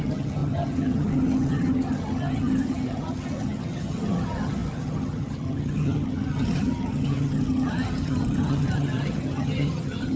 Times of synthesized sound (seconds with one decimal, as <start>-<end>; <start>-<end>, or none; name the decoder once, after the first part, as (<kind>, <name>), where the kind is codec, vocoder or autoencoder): 0.0-10.2 (vocoder, HiFi-GAN)